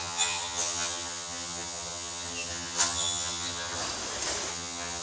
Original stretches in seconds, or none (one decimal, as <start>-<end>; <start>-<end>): 3.8-4.5